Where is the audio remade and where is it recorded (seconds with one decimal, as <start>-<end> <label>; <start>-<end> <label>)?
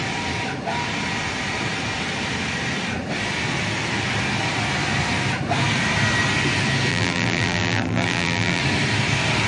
0.0-6.9 recorded; 6.9-8.6 remade; 8.6-9.5 recorded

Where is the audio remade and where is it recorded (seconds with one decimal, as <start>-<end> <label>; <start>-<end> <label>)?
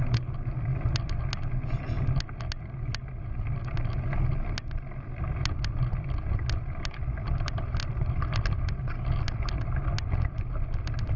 0.0-11.2 recorded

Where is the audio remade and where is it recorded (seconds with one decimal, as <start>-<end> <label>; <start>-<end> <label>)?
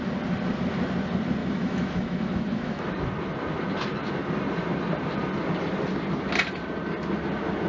0.0-1.4 recorded; 1.4-2.9 remade; 2.9-7.7 recorded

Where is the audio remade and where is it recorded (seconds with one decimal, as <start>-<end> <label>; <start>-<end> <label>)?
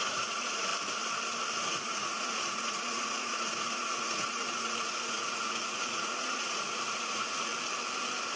0.0-0.7 remade; 0.7-1.7 recorded; 1.7-7.5 remade; 7.5-8.4 recorded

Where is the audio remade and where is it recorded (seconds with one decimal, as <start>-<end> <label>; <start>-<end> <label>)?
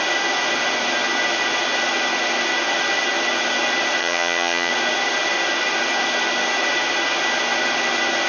0.0-4.0 recorded; 4.0-4.7 remade; 4.7-8.3 recorded